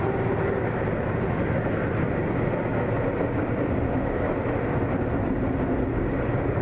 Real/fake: real